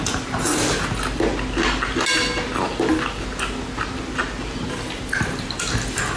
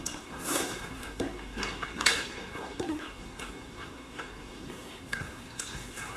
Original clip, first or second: first